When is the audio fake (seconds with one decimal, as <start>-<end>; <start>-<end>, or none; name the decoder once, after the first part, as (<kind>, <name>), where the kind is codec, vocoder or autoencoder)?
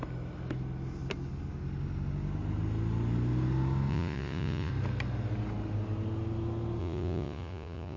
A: 3.9-4.7 (vocoder, Vocos); 6.8-8.0